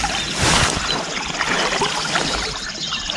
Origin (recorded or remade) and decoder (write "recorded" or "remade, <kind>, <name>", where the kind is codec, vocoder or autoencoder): recorded